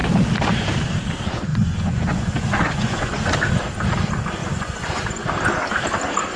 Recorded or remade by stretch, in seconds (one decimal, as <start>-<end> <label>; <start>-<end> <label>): 0.0-1.5 recorded; 1.5-3.3 remade; 3.3-4.4 recorded; 4.4-5.0 remade; 5.0-6.4 recorded